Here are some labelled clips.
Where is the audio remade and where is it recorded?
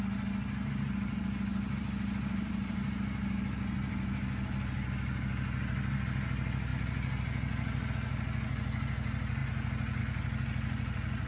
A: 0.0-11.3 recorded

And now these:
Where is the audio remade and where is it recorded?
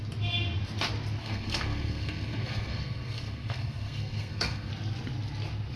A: 0.0-1.2 recorded; 1.2-4.7 remade; 4.7-5.8 recorded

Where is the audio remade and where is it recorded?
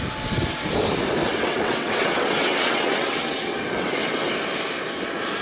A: 0.0-1.2 recorded; 1.2-4.3 remade; 4.3-5.4 recorded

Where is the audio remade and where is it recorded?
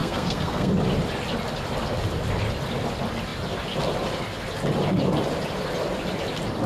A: 0.0-0.7 remade; 0.7-6.7 recorded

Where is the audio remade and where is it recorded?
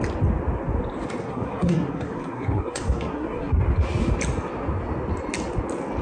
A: 0.0-1.2 recorded; 1.2-3.6 remade; 3.6-6.0 recorded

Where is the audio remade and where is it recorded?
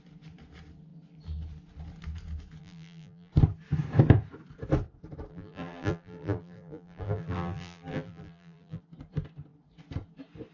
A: 0.0-2.6 recorded; 2.6-3.3 remade; 3.3-5.3 recorded; 5.3-8.8 remade; 8.8-10.5 recorded